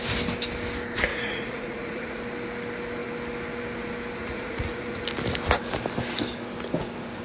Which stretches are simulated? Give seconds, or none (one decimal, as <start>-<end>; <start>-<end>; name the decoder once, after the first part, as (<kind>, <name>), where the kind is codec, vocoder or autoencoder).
1.1-2.2 (vocoder, Vocos); 4.2-5.0